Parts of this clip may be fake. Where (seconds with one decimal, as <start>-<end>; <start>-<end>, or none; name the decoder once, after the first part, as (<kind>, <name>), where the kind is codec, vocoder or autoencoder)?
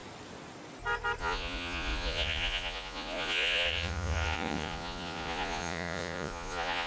1.2-6.9 (vocoder, Vocos)